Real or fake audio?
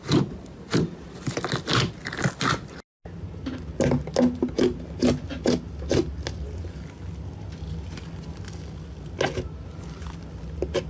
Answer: real